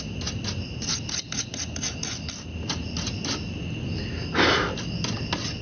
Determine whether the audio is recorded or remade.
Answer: recorded